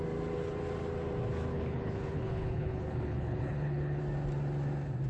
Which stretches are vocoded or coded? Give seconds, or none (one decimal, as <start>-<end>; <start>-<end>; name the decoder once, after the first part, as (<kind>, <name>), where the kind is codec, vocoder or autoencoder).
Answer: 1.5-4.0 (codec, HILCodec)